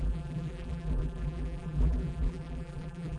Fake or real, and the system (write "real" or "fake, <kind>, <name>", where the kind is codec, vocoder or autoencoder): fake, vocoder, BigVGAN v2